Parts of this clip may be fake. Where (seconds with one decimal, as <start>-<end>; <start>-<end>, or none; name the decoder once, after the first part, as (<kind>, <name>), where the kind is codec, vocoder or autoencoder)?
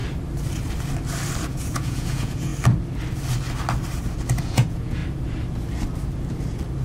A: 1.4-2.5 (vocoder, Vocos); 4.4-5.0